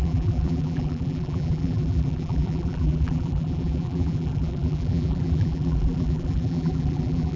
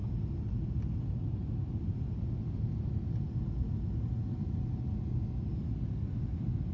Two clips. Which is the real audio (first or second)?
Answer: second